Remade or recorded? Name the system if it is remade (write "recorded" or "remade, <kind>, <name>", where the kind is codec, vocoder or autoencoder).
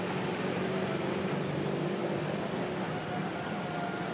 remade, vocoder, BigVGAN v2